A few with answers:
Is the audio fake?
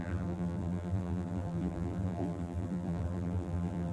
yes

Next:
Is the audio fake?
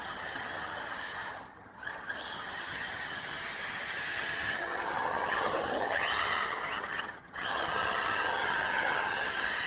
yes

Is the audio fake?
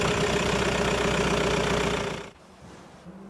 no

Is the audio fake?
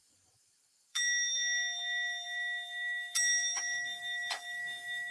yes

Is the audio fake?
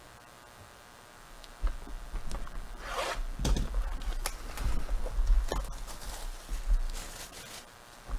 no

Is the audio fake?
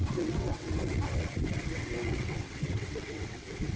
yes